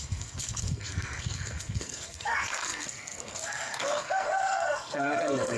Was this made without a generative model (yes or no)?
no